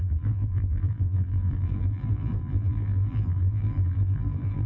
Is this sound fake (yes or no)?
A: yes